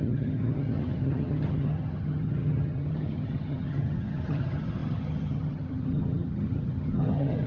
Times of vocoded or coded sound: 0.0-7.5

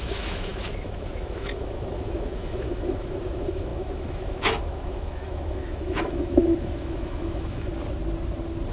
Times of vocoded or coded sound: 0.0-7.7

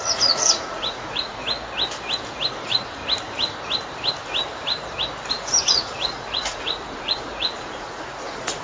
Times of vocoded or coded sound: 0.0-1.4; 2.5-3.0; 5.3-8.6

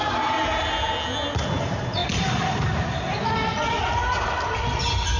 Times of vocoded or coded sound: none

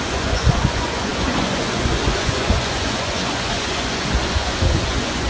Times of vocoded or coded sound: 0.0-5.3

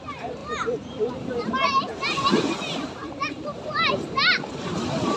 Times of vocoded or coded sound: 0.0-5.2

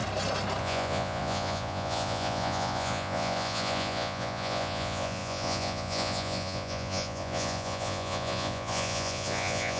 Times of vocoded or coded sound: 0.6-9.8